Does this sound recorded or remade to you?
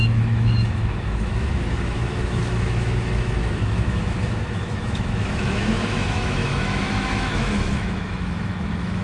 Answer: remade